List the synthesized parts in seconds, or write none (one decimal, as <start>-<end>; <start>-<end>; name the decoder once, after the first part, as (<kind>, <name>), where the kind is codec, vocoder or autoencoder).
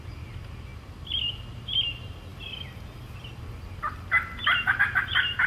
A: none